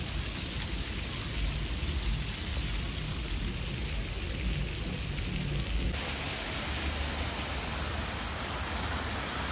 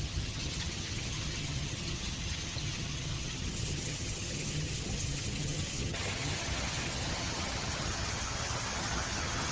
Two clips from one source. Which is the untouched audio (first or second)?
first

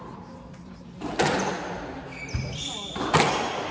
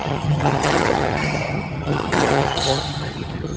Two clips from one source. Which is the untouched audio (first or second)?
first